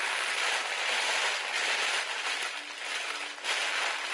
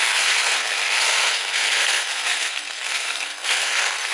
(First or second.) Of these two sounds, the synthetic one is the second